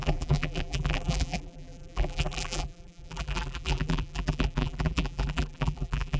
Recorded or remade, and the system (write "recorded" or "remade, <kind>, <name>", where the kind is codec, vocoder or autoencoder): remade, vocoder, BigVGAN v2